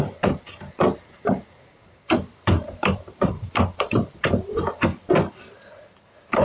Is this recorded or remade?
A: remade